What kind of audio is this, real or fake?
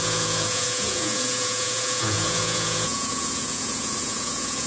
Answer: fake